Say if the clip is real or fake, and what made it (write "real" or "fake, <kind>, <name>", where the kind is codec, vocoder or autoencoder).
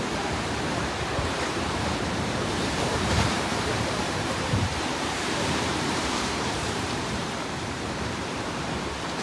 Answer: fake, vocoder, BigVGAN v2